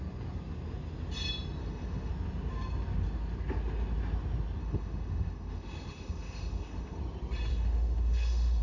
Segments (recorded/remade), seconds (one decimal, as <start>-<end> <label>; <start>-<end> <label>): 0.0-1.6 recorded; 1.6-2.1 remade; 2.1-4.6 recorded; 4.6-7.0 remade; 7.0-7.5 recorded; 7.5-8.6 remade